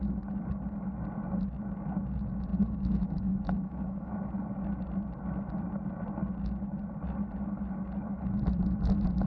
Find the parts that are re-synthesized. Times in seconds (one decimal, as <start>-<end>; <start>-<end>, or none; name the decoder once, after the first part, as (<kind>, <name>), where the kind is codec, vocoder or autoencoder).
2.5-4.3 (autoencoder, DAC-VAE)